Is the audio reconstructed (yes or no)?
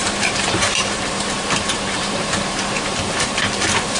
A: yes